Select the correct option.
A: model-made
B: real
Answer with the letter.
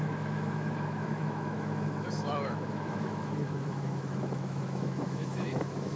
A